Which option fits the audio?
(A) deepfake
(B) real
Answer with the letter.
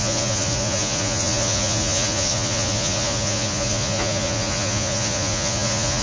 A